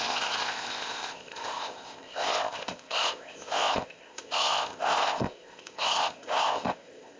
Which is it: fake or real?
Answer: fake